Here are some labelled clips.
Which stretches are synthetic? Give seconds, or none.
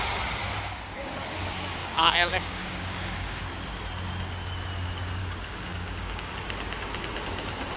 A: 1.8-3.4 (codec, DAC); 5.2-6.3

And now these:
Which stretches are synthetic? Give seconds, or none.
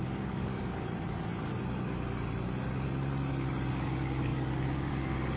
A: 0.0-0.5 (codec, DAC); 3.7-5.4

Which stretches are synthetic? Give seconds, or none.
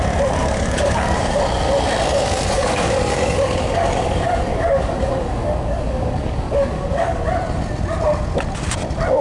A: 0.4-1.4 (codec, DAC); 2.1-7.2